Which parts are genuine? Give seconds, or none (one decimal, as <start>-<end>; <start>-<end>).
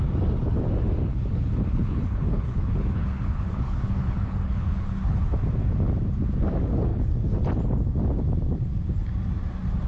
0.0-1.1; 5.2-6.9; 7.4-9.9